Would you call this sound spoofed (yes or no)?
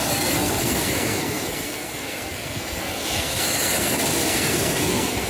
yes